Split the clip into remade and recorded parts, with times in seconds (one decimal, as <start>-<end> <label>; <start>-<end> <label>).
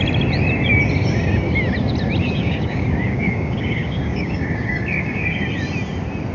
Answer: 0.0-2.2 recorded; 2.2-5.4 remade; 5.4-6.3 recorded